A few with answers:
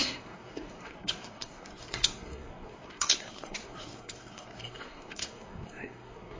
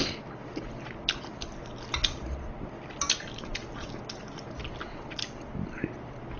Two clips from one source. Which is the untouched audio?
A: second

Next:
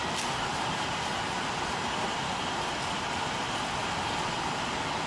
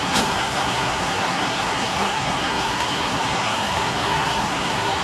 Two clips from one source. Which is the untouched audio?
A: first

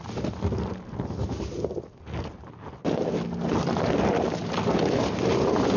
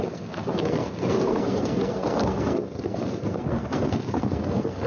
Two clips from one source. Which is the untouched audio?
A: first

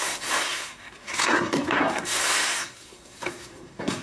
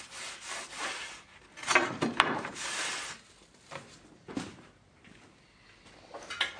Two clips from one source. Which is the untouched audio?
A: second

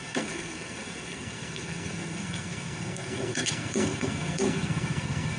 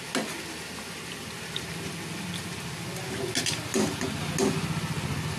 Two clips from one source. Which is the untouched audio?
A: second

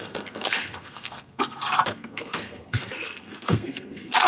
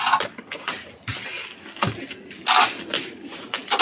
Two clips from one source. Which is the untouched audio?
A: second